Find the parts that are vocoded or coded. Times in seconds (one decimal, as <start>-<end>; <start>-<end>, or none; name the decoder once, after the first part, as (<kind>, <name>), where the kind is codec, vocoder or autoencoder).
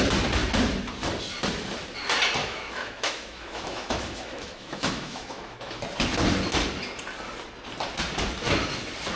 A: 2.4-5.8 (autoencoder, DAC-VAE)